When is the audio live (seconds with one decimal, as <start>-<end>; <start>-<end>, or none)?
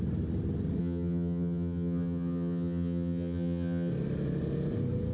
0.0-0.8; 3.9-5.1